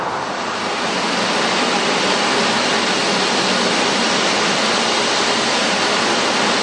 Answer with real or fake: real